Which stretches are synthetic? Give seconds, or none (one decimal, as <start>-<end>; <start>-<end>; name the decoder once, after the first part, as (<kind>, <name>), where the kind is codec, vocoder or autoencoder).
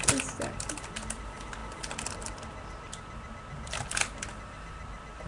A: none